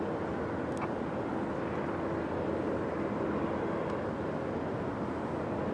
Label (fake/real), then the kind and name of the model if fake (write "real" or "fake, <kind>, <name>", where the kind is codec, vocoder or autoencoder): real